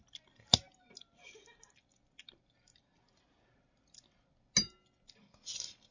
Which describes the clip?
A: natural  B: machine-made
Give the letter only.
A